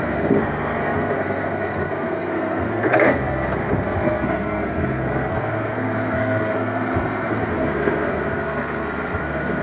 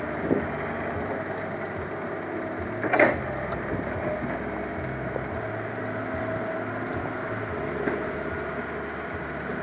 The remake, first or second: first